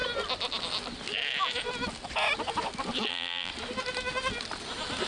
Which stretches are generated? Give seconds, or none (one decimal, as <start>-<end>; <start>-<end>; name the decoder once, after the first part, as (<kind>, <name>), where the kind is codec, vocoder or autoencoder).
3.1-3.5 (vocoder, BigVGAN v2)